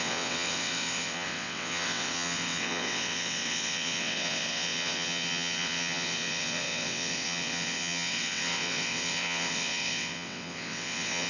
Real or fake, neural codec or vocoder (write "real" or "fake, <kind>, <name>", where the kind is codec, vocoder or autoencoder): fake, vocoder, WaveNeXt